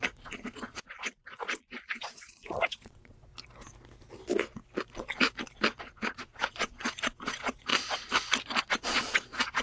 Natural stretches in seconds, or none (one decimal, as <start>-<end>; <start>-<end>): 3.3-5.8; 7.7-8.6